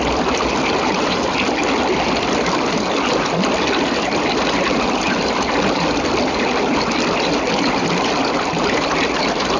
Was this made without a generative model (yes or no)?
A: yes